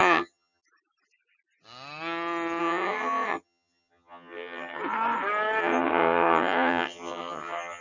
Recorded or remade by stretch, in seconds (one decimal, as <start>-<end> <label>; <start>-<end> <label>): 0.0-0.6 remade; 0.6-2.6 recorded; 2.6-4.8 remade; 4.8-5.6 recorded; 5.6-7.8 remade